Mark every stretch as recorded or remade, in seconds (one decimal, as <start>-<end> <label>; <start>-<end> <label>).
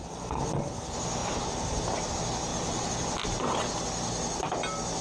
0.0-1.2 recorded; 1.2-2.1 remade; 2.1-2.5 recorded; 2.5-3.2 remade; 3.2-5.0 recorded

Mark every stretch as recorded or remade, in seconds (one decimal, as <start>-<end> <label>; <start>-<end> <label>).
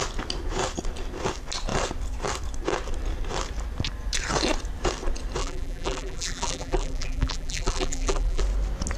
0.0-5.4 recorded; 5.4-8.4 remade; 8.4-9.0 recorded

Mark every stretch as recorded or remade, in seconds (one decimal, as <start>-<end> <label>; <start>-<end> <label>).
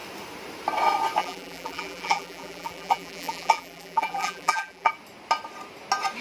0.0-1.2 recorded; 1.2-4.9 remade; 4.9-6.2 recorded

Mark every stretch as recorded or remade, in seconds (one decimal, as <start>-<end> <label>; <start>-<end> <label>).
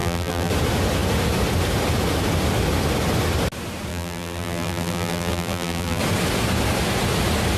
0.0-0.5 remade; 0.5-3.9 recorded; 3.9-6.0 remade; 6.0-7.6 recorded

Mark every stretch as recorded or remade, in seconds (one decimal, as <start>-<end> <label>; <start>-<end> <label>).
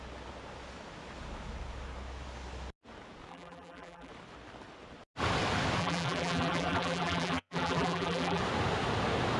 0.0-3.3 recorded; 3.3-4.1 remade; 4.1-5.8 recorded; 5.8-8.4 remade; 8.4-9.4 recorded